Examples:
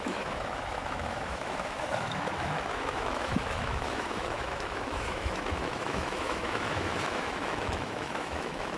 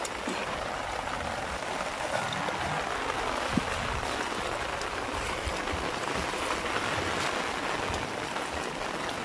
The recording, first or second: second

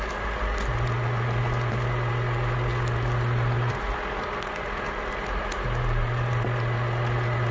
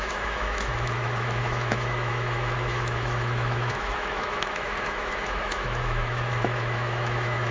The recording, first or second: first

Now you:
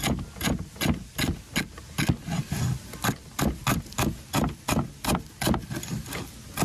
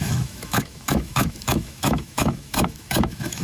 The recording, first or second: first